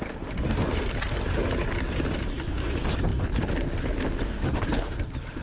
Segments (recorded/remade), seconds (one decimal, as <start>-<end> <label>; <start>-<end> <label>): 0.0-5.4 recorded